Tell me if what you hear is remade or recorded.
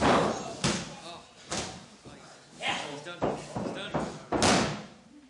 recorded